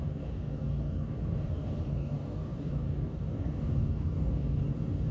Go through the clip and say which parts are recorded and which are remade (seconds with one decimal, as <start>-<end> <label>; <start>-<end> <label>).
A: 0.0-5.1 remade